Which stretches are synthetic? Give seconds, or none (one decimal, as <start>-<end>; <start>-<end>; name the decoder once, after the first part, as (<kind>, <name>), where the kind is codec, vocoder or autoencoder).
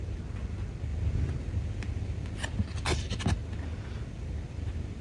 3.4-5.0 (vocoder, BigVGAN v2)